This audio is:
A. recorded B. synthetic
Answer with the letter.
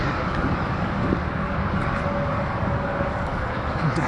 B